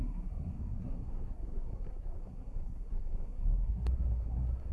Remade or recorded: remade